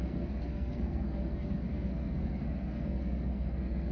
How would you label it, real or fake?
fake